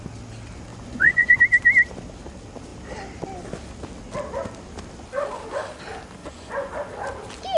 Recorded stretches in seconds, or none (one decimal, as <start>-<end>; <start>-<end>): 0.0-0.7; 1.4-6.2; 6.7-7.6